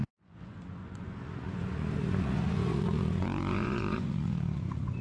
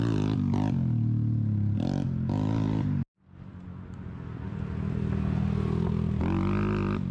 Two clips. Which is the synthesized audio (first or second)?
first